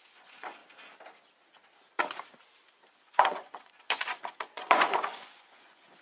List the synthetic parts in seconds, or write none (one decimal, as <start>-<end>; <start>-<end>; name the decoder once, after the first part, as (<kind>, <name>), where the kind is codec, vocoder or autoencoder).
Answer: 0.0-0.6 (vocoder, Vocos); 2.9-6.0